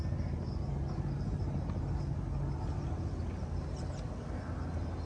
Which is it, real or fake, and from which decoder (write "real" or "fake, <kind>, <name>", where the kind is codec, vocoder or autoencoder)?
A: real